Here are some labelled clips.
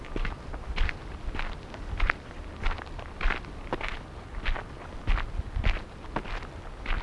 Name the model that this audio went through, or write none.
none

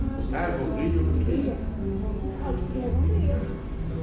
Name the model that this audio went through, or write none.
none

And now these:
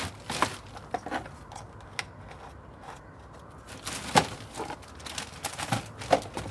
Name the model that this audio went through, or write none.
none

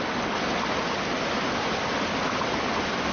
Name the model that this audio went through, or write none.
none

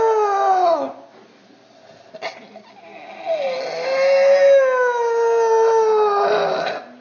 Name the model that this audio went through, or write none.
none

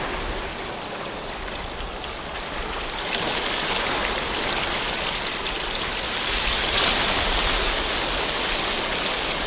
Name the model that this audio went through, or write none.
none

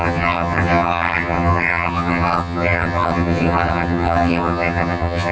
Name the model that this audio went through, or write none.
vocoder, HiFi-GAN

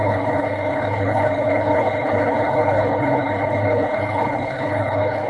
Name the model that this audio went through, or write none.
codec, HILCodec